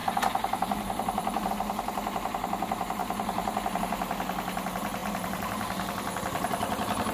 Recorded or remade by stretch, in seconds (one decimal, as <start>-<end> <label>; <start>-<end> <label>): 0.0-1.5 remade; 1.5-5.0 recorded; 5.0-7.1 remade